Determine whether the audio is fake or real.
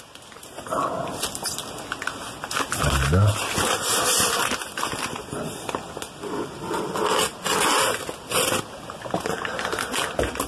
real